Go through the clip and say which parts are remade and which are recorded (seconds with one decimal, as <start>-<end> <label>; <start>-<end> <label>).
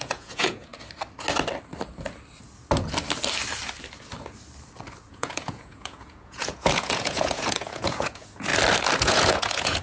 0.0-0.7 remade; 0.7-5.1 recorded; 5.1-8.5 remade; 8.5-9.0 recorded; 9.0-9.8 remade